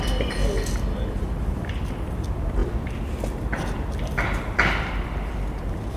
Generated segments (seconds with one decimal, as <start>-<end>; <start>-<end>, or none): none